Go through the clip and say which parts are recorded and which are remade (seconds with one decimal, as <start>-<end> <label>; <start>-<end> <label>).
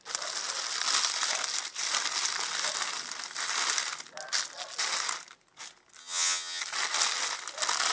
0.0-6.0 recorded; 6.0-6.6 remade; 6.6-7.9 recorded